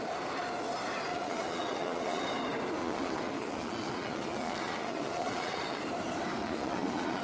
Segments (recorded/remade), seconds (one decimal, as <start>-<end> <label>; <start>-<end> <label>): 0.0-1.1 recorded; 1.1-2.2 remade; 2.2-2.8 recorded; 2.8-5.8 remade; 5.8-6.4 recorded; 6.4-7.2 remade